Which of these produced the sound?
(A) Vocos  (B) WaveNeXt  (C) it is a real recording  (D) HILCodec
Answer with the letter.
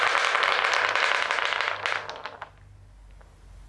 C